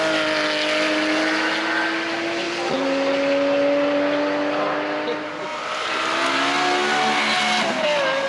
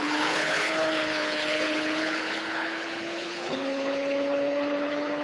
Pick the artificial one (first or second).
second